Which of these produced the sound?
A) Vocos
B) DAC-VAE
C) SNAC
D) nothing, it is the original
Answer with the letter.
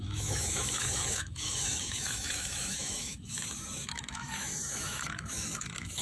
B